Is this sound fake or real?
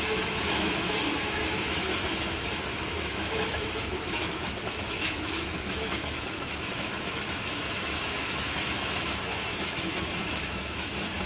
fake